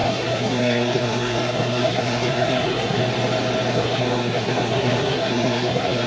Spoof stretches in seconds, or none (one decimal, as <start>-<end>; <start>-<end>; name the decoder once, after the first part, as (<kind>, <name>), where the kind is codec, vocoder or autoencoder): 0.0-3.0 (codec, SNAC); 3.7-6.1